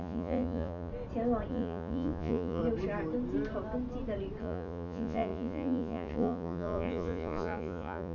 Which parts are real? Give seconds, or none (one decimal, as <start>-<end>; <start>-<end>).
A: 0.9-1.5; 2.6-4.4